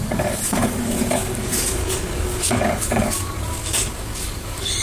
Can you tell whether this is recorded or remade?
remade